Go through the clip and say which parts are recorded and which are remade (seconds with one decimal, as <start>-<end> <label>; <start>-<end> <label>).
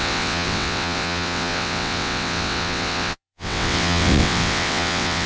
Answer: 0.0-5.3 remade